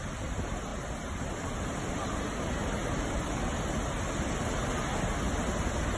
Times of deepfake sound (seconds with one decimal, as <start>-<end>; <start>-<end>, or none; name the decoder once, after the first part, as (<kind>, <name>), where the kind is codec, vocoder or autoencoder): none